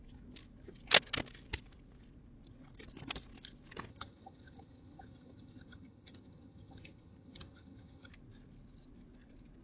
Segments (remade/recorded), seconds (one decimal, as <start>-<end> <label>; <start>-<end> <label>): 0.0-3.9 recorded; 3.9-8.1 remade; 8.1-9.6 recorded